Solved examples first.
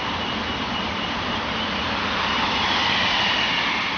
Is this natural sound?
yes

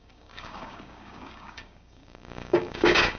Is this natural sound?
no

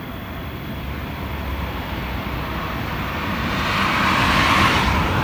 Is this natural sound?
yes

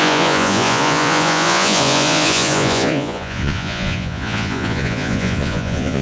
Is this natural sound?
no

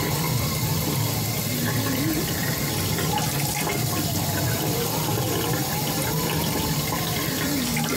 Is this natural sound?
yes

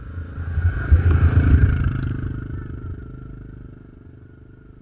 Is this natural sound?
yes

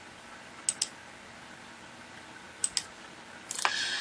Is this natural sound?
yes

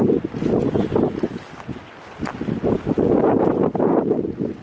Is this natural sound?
yes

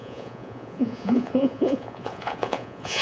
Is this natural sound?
no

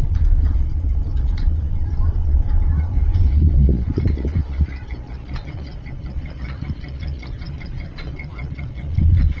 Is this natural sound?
no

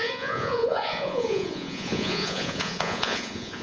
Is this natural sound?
no